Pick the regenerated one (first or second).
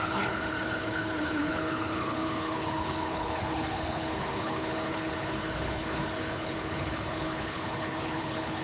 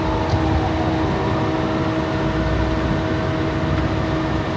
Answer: first